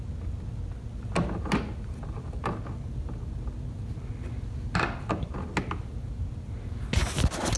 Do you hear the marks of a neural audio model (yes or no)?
no